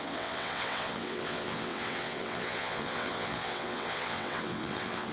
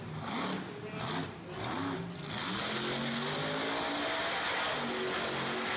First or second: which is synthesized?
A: first